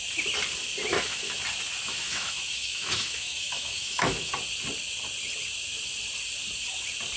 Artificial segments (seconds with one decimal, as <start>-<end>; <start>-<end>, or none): 0.9-1.4; 1.8-4.3